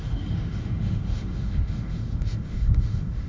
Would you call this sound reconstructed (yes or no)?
yes